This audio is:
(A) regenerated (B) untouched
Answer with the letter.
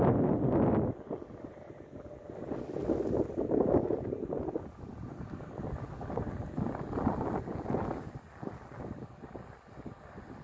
B